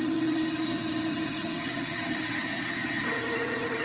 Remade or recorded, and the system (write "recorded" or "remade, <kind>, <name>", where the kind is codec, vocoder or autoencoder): remade, vocoder, HiFi-GAN